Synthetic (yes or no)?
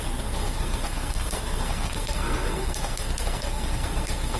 yes